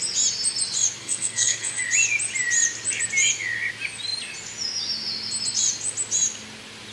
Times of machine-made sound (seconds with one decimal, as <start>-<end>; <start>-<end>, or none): 1.0-1.8